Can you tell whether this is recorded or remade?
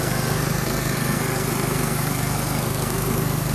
remade